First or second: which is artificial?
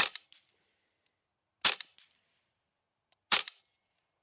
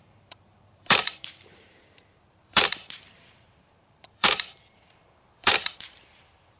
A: second